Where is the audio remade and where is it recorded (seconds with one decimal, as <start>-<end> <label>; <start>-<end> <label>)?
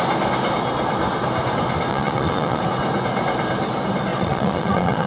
0.0-1.9 recorded; 1.9-2.6 remade; 2.6-4.1 recorded; 4.1-5.1 remade